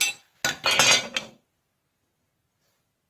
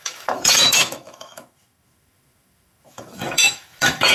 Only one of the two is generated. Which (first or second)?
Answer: second